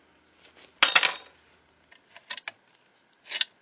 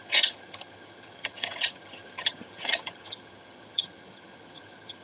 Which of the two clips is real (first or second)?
first